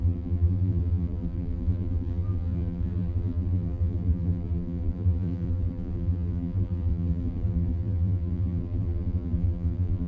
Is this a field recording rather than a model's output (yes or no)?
no